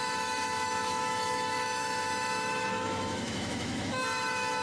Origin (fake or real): fake